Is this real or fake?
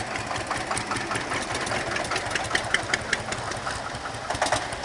real